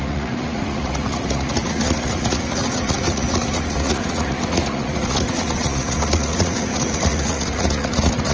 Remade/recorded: remade